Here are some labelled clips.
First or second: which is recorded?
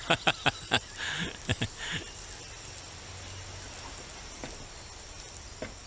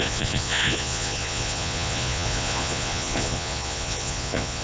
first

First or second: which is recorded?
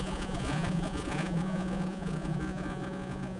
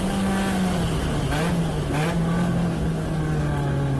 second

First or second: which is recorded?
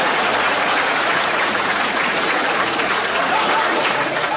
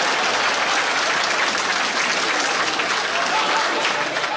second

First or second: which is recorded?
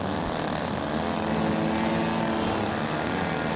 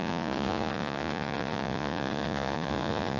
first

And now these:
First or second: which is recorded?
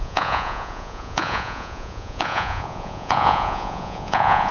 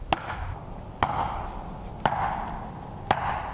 second